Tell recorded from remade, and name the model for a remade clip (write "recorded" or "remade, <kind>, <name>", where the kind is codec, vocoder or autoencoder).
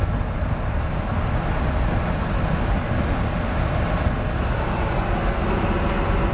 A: recorded